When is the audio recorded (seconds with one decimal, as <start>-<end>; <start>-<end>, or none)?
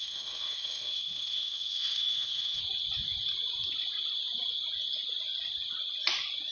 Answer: 2.6-6.5